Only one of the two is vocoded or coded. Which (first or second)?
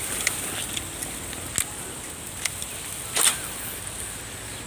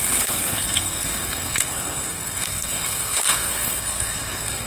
second